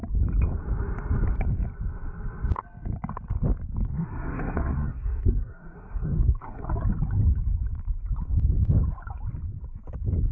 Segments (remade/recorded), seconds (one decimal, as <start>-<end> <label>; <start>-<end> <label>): 0.0-3.9 recorded; 3.9-6.7 remade; 6.7-10.3 recorded

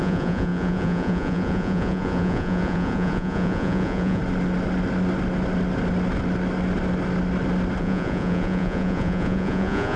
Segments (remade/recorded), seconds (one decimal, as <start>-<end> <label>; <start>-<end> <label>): 0.0-4.2 remade; 4.2-7.8 recorded; 7.8-10.0 remade

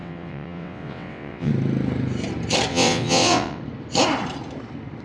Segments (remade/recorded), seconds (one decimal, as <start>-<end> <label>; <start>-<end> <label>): 0.0-1.5 remade; 1.5-2.7 recorded; 2.7-3.6 remade; 3.6-5.0 recorded

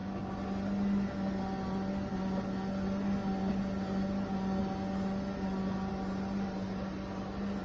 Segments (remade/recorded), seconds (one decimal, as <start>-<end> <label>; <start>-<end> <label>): 0.0-7.6 recorded

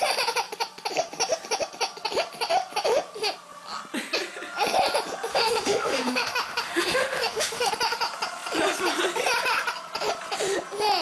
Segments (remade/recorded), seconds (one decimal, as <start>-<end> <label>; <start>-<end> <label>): 0.0-5.3 recorded; 5.3-7.7 remade; 7.7-11.0 recorded

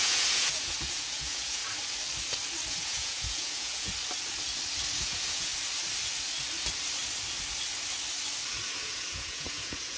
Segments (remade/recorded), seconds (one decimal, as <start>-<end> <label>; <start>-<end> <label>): 0.0-1.6 remade; 1.6-2.7 recorded; 2.7-3.9 remade; 3.9-5.0 recorded; 5.0-5.5 remade; 5.5-8.8 recorded; 8.8-10.0 remade

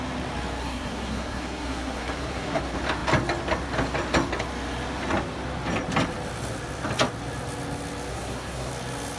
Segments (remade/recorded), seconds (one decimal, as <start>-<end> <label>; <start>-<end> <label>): 0.0-0.6 recorded; 0.6-2.6 remade; 2.6-8.1 recorded; 8.1-8.7 remade; 8.7-9.2 recorded